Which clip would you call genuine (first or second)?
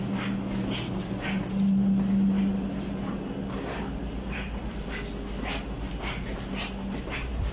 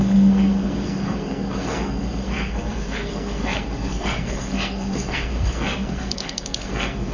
first